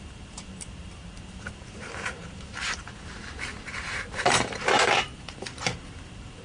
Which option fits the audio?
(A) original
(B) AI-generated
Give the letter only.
B